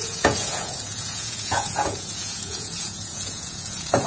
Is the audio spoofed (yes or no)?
yes